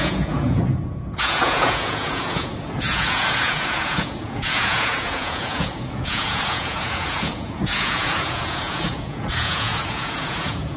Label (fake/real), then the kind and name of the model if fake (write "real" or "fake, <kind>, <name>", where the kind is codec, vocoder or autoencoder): fake, vocoder, Vocos